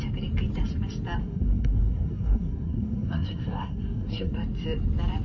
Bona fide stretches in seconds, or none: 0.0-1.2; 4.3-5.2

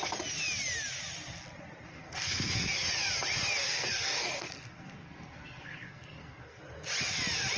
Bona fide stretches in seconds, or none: 0.0-1.9; 2.7-3.6; 6.6-7.6

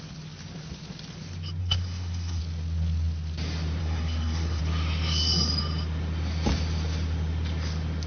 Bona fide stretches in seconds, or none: 0.0-1.6; 2.4-3.8; 4.6-8.1

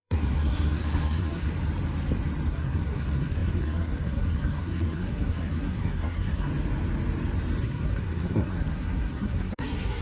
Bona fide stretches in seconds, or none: 1.5-2.5; 6.5-7.6

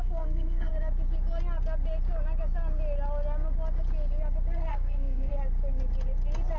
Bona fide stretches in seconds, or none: 0.7-4.7; 5.3-6.6

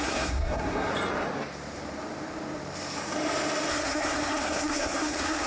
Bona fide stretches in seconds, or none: 0.9-3.7